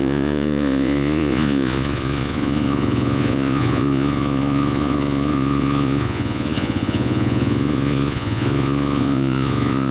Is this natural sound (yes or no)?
no